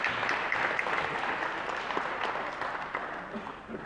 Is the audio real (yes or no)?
yes